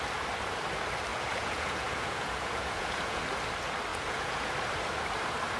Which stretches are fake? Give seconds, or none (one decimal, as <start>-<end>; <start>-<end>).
1.1-3.2; 3.9-4.5